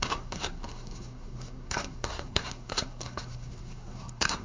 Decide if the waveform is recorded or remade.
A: remade